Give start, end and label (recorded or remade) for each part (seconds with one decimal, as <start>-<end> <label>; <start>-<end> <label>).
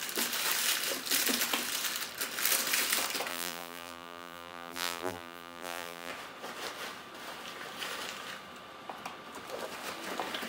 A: 0.0-3.3 recorded; 3.3-6.1 remade; 6.1-10.5 recorded